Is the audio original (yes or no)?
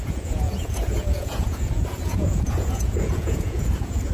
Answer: no